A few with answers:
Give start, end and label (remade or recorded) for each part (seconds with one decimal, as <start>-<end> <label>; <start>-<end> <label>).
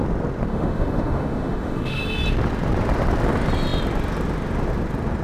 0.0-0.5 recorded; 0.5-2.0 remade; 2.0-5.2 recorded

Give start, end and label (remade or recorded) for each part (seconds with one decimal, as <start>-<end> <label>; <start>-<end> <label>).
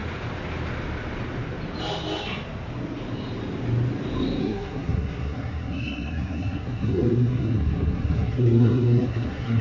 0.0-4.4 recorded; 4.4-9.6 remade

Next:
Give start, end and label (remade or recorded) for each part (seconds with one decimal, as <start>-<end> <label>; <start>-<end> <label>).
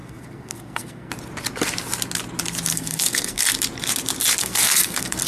0.0-1.1 remade; 1.1-2.7 recorded; 2.7-3.4 remade; 3.4-4.4 recorded; 4.4-5.3 remade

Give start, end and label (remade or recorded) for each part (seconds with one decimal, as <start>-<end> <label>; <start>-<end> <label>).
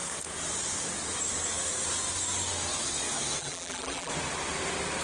0.0-3.4 recorded; 3.4-4.1 remade; 4.1-5.0 recorded